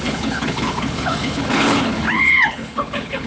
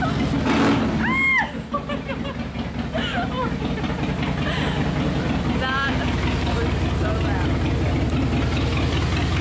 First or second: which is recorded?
second